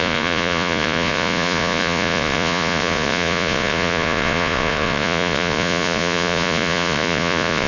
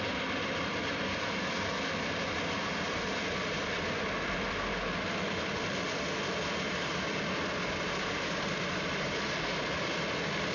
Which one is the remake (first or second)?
first